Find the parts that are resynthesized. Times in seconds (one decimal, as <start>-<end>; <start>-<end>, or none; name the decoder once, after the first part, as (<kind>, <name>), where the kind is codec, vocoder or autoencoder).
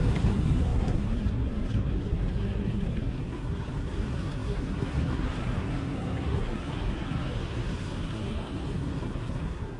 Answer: 0.0-9.8 (codec, SNAC)